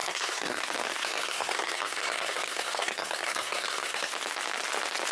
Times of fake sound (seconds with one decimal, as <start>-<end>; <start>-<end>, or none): 0.0-0.6; 1.0-4.1